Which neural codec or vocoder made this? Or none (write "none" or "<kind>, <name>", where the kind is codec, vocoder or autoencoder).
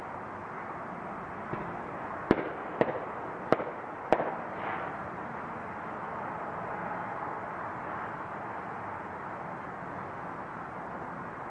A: none